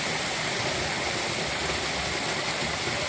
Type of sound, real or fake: real